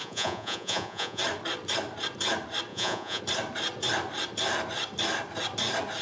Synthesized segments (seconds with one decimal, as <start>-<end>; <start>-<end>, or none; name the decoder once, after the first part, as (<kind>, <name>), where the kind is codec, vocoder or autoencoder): 0.0-1.2 (vocoder, Vocos); 2.7-3.2